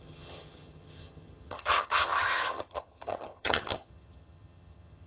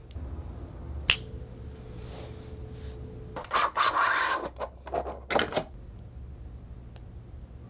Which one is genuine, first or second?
second